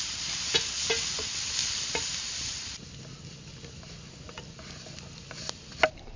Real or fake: real